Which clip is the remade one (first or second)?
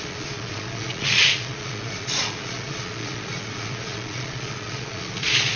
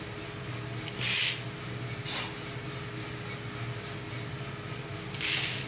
first